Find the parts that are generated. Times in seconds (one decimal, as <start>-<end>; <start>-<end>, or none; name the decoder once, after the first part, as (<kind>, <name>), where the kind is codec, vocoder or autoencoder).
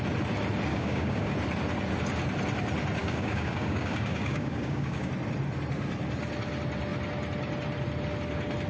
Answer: 0.7-1.3 (codec, DAC); 3.0-5.1